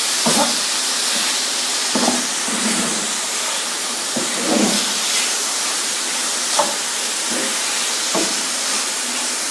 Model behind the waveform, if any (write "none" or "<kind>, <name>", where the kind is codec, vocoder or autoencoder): vocoder, BigVGAN v2